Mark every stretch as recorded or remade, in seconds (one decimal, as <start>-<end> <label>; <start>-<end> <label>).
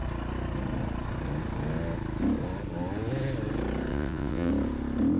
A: 0.0-3.9 recorded; 3.9-4.5 remade; 4.5-5.2 recorded